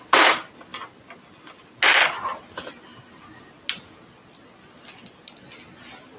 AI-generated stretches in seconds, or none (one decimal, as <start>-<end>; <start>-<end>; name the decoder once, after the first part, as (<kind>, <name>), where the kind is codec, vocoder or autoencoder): none